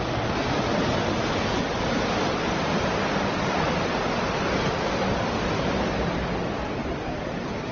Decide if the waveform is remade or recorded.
recorded